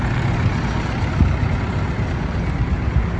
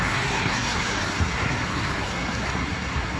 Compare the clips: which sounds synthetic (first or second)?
second